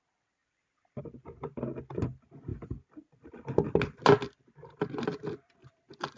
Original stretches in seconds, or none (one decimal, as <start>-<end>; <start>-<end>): 0.0-6.2